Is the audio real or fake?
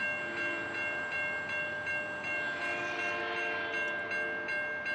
real